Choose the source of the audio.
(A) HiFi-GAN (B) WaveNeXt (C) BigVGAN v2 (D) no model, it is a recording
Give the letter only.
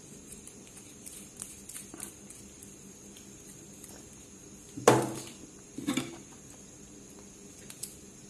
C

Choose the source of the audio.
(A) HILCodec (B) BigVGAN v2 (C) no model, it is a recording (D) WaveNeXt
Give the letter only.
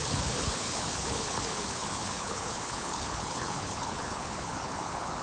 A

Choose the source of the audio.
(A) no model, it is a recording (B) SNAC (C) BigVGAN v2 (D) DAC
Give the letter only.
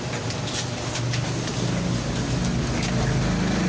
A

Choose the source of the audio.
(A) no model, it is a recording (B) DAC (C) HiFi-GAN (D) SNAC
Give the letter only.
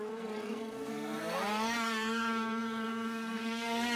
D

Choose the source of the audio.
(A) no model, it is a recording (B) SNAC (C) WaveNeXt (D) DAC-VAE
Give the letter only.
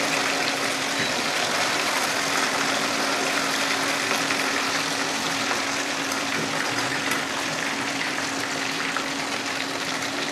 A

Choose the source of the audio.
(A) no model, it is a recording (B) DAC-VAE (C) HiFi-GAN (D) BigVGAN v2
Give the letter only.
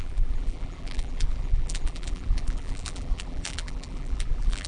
D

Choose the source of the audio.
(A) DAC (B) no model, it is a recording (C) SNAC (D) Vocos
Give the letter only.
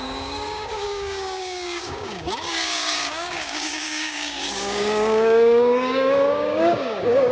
A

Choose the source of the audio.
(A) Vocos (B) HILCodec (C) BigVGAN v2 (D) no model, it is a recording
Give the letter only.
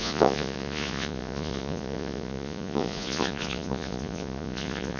A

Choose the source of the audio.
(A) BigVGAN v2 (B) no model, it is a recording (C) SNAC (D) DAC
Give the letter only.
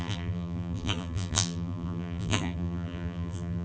A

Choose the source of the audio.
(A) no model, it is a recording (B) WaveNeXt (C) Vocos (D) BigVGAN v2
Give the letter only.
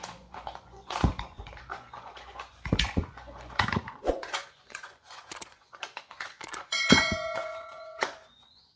C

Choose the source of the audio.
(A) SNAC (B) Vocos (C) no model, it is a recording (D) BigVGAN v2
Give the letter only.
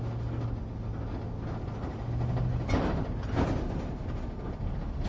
C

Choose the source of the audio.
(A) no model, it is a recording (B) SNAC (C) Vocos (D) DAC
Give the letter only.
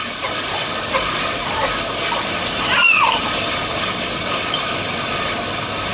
A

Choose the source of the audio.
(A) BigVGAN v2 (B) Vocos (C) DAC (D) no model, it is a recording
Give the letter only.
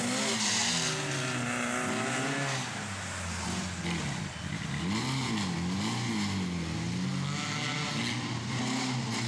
D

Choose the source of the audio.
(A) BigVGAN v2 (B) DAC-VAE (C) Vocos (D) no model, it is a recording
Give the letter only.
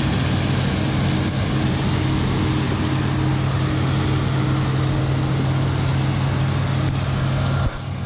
D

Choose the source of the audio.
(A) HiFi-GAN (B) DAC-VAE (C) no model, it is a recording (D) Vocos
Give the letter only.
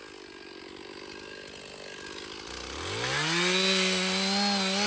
C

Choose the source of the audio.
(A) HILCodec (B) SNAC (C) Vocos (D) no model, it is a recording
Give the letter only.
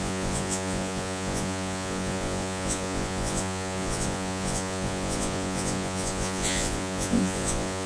C